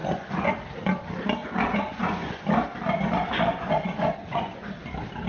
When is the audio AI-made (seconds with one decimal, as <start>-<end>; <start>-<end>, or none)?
0.0-0.5; 1.4-2.4; 3.5-4.7